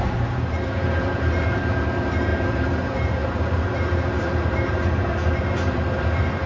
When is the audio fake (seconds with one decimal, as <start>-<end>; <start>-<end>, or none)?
0.0-6.5